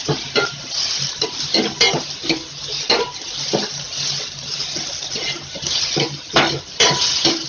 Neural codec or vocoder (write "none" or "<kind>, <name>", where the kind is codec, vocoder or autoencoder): none